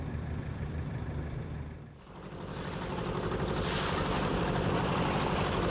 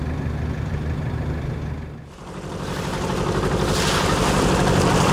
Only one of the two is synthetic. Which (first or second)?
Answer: first